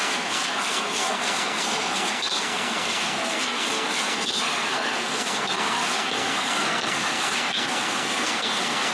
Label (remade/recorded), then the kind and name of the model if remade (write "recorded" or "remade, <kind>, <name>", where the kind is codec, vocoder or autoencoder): remade, codec, SNAC